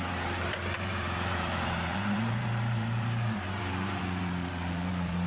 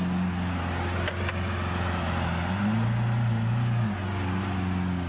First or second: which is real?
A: second